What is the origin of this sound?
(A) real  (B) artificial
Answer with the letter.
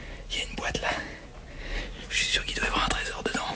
A